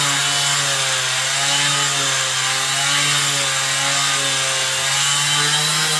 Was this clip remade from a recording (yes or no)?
no